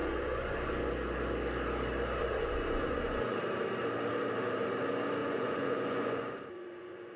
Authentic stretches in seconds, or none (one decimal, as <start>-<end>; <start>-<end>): 0.9-2.2; 3.4-5.2